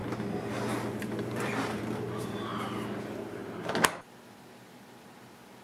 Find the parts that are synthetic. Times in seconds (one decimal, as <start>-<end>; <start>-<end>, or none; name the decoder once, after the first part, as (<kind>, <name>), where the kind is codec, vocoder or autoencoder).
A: 1.0-2.5 (vocoder, BigVGAN v2); 3.0-3.4; 4.0-5.6